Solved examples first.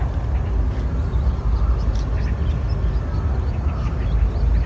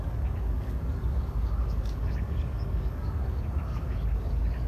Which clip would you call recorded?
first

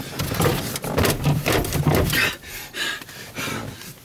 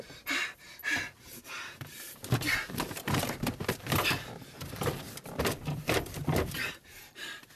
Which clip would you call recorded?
first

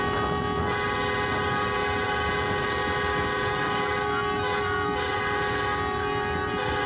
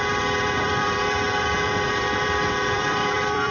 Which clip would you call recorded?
first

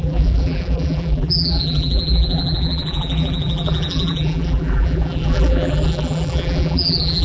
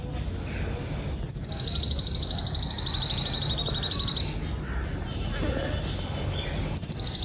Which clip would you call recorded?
second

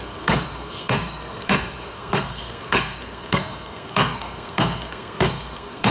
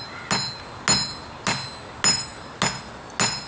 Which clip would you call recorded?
second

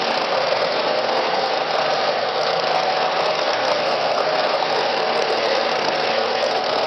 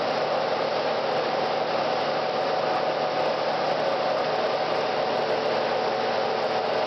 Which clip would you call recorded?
second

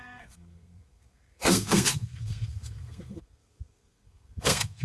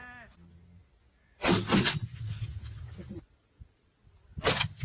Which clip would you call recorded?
second